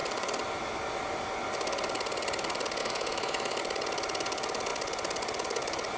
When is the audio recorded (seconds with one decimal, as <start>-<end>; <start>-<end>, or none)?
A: 0.0-2.8; 3.6-6.0